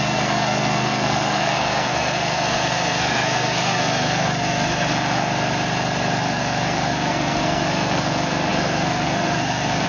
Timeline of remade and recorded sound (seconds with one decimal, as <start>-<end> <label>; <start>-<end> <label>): 0.0-5.3 remade; 5.3-6.2 recorded; 6.2-9.9 remade